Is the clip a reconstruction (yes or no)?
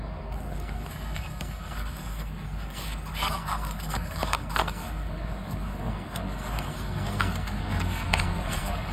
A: yes